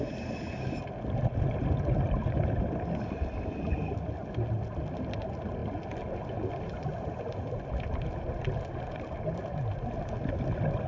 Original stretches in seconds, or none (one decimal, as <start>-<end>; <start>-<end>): 0.0-10.9